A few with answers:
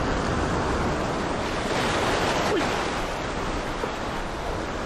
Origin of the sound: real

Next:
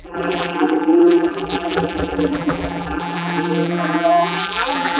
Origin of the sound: fake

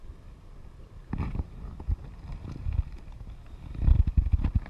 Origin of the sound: fake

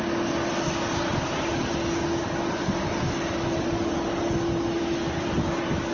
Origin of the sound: real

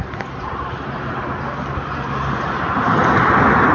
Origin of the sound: fake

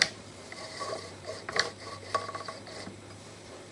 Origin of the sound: fake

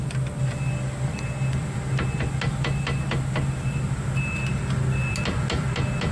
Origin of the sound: real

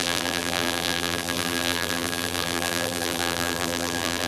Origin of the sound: fake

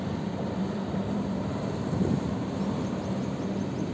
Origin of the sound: fake